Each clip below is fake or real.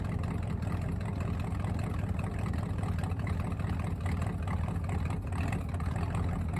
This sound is real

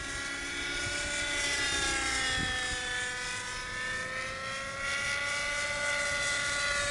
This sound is real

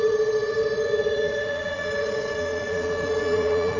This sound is fake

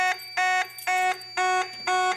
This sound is real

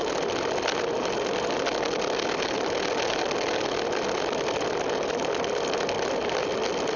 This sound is real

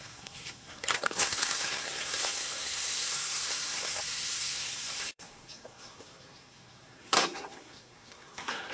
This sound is fake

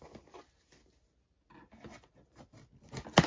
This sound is real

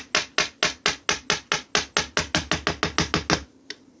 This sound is real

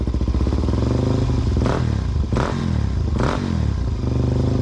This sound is real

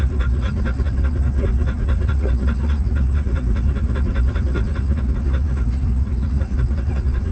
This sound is fake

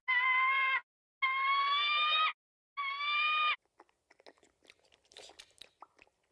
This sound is real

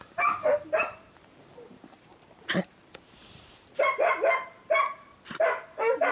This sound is fake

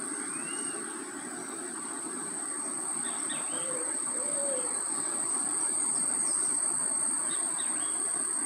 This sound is fake